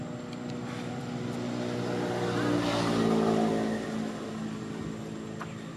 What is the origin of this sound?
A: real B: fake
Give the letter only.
A